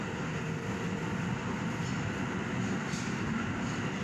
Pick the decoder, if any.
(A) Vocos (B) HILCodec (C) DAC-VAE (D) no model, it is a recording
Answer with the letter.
D